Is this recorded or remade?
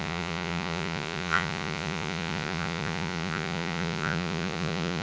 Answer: remade